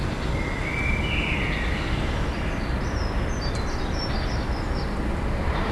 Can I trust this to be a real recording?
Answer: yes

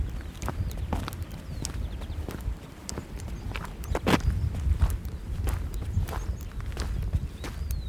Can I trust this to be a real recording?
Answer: yes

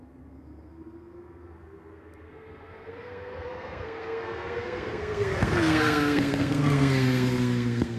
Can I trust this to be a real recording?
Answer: no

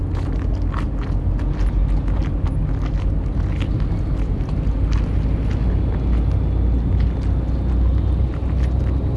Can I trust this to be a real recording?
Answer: yes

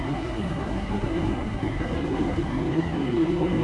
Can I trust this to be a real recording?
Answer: no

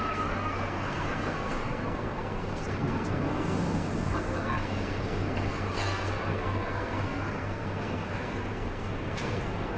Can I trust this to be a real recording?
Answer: no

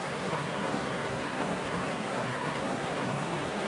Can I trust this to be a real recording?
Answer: no